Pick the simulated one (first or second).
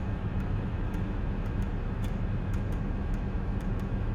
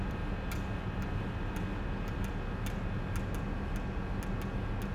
first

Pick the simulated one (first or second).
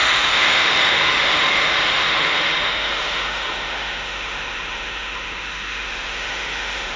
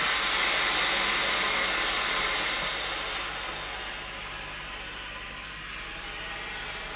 first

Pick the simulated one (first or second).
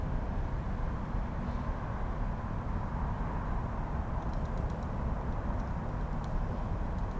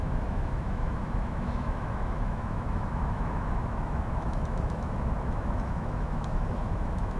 second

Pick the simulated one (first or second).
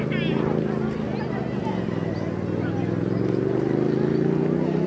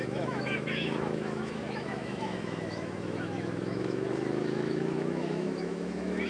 second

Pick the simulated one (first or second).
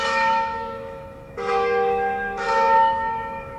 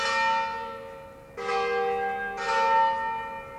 first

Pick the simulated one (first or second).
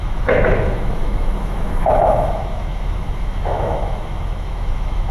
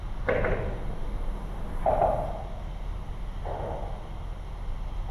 first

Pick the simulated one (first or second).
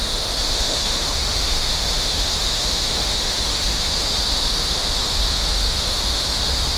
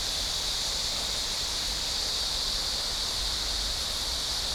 first